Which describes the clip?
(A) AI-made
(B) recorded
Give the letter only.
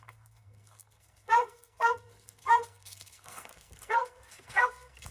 A